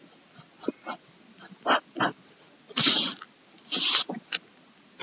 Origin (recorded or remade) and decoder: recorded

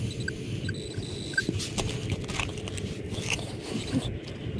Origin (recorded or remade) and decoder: recorded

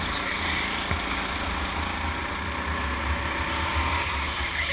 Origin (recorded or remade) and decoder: recorded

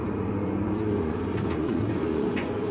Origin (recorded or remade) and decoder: remade, vocoder, Vocos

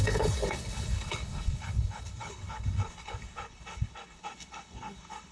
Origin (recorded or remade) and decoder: remade, codec, HILCodec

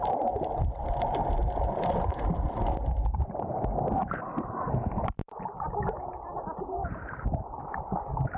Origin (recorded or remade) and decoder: recorded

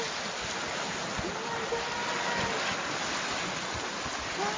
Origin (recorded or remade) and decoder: recorded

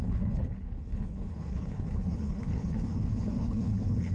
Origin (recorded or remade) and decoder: remade, codec, HILCodec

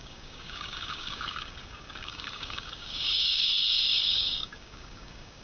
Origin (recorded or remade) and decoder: remade, codec, DAC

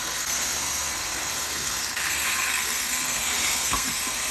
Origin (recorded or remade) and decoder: remade, codec, SNAC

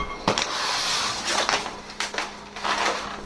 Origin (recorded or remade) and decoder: recorded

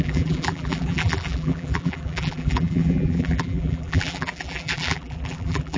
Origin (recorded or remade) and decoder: remade, vocoder, BigVGAN v2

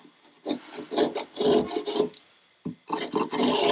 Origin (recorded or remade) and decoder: recorded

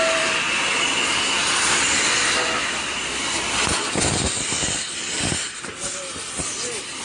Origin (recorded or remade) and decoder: remade, vocoder, BigVGAN v2